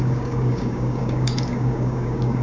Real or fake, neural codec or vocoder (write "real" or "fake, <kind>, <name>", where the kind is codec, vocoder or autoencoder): fake, codec, DAC